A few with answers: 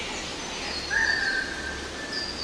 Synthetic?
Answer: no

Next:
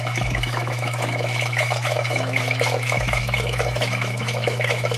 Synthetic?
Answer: yes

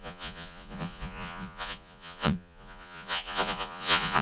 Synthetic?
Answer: yes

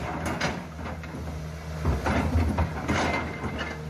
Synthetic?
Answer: no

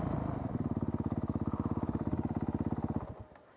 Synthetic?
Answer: no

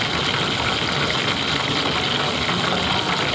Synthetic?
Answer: no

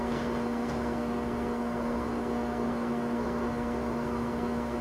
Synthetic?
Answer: yes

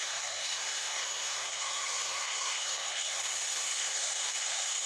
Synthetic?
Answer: yes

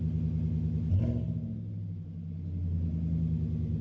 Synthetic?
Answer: no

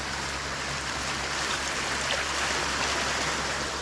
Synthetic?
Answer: no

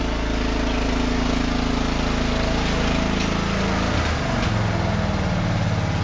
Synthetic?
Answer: no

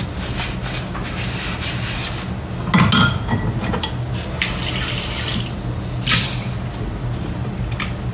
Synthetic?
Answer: no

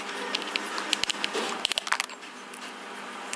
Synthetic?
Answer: no